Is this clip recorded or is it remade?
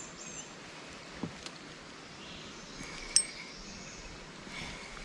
recorded